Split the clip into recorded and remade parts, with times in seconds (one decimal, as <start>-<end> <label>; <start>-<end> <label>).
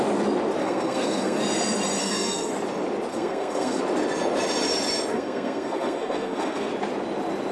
0.0-0.6 recorded; 0.6-1.4 remade; 1.4-2.0 recorded; 2.0-2.5 remade; 2.5-3.1 recorded; 3.1-3.8 remade; 3.8-5.1 recorded; 5.1-6.7 remade; 6.7-7.5 recorded